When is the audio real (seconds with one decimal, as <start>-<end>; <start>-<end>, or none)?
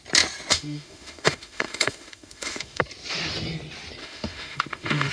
0.0-0.5; 2.8-4.0